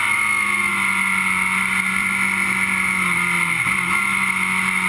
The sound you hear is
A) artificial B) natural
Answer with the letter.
B